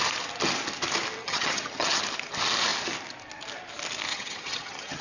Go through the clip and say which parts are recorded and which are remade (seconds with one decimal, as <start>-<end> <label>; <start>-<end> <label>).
0.0-1.2 recorded; 1.2-2.0 remade; 2.0-4.1 recorded; 4.1-5.0 remade